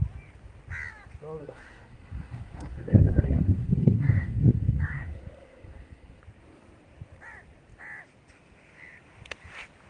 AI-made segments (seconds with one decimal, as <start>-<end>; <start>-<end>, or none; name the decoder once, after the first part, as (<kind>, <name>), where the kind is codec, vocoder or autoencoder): 1.4-6.2 (codec, SNAC)